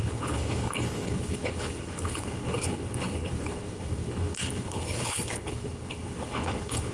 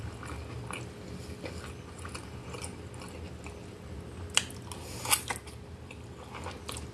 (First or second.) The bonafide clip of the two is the second